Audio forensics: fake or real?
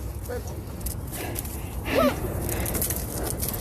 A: real